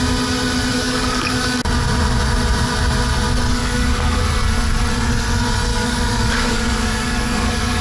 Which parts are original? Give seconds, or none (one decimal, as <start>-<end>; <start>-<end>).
0.0-0.7; 1.6-3.6; 4.2-5.7